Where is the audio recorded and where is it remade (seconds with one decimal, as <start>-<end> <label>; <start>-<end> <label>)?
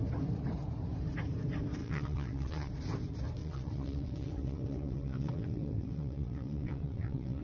0.0-1.8 recorded; 1.8-2.7 remade; 2.7-3.4 recorded; 3.4-7.4 remade